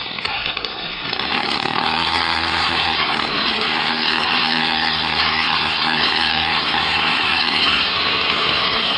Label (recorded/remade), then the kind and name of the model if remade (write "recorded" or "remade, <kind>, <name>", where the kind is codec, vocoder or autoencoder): remade, codec, SNAC